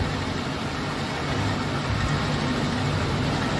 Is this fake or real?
real